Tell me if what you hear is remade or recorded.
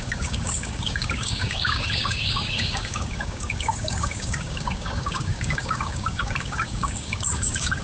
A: remade